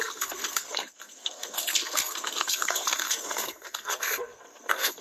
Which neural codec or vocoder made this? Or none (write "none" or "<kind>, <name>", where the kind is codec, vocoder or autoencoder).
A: codec, SNAC